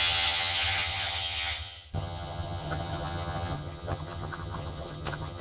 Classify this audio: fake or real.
fake